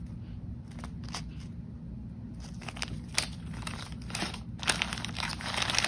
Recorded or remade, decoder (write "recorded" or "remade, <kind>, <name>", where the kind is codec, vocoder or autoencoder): recorded